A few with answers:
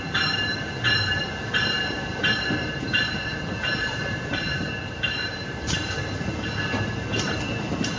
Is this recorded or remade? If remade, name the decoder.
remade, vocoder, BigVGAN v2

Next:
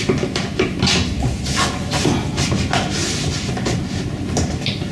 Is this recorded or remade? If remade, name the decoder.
recorded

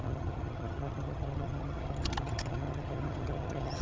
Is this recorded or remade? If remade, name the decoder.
remade, vocoder, HiFi-GAN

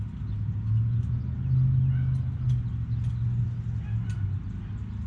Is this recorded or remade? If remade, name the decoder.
recorded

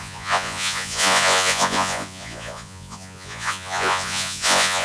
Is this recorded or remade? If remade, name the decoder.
remade, vocoder, Vocos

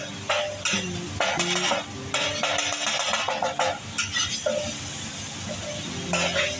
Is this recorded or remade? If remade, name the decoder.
recorded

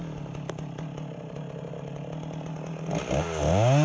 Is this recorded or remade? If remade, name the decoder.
recorded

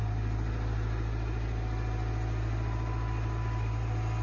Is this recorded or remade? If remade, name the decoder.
recorded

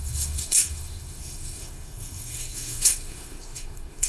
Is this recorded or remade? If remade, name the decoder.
remade, codec, SNAC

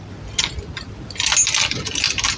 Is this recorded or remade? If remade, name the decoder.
recorded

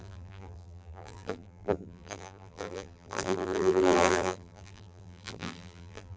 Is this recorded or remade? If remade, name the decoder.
remade, vocoder, BigVGAN v2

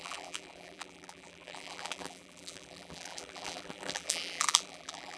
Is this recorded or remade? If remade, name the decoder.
remade, vocoder, BigVGAN v2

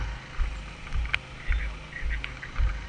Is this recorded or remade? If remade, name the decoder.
recorded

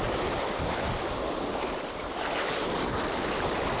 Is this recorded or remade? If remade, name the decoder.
recorded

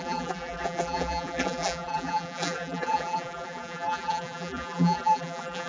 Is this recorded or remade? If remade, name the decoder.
remade, vocoder, BigVGAN v2